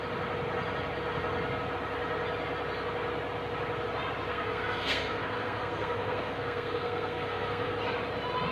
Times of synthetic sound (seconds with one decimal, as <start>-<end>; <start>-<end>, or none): 4.3-7.8